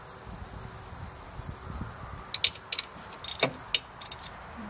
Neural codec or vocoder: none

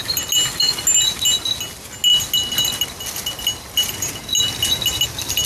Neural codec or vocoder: none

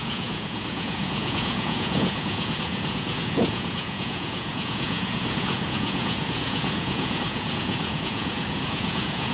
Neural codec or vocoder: vocoder, Vocos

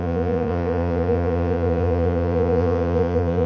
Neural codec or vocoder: vocoder, Vocos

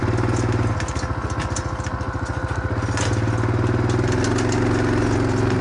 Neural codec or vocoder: none